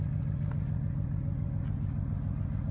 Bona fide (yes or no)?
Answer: yes